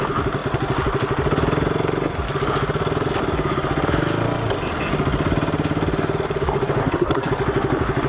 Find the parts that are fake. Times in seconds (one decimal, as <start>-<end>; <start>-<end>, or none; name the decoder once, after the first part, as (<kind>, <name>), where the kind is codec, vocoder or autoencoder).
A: 6.8-7.3 (codec, SNAC)